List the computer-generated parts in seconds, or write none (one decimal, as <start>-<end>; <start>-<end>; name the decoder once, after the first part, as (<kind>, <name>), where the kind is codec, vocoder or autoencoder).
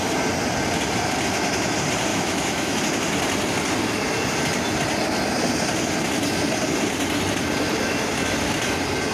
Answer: 2.1-2.8 (autoencoder, DAC-VAE)